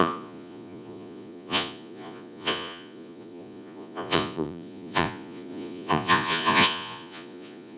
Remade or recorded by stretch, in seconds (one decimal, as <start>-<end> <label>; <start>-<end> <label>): 0.0-7.8 remade